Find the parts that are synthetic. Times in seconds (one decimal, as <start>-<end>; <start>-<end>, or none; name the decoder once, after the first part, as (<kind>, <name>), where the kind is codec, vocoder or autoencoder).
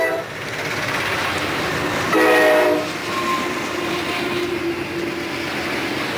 3.0-4.1 (vocoder, BigVGAN v2)